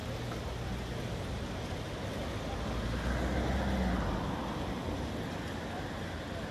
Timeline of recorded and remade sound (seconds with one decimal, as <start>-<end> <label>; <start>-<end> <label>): 0.0-6.5 recorded

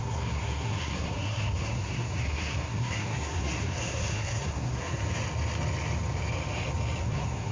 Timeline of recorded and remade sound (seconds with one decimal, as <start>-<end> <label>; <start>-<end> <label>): 0.0-5.0 remade; 5.0-7.0 recorded; 7.0-7.5 remade